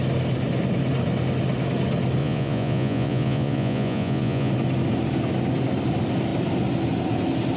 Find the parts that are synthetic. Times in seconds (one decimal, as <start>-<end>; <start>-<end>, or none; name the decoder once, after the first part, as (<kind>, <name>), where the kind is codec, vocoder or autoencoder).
2.2-4.5 (vocoder, Vocos)